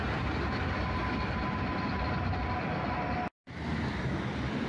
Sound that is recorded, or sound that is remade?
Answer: recorded